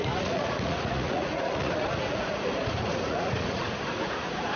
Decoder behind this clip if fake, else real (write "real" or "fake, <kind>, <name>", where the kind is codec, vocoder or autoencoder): fake, vocoder, Vocos